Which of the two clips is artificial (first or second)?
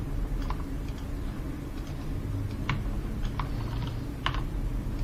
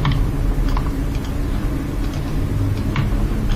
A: first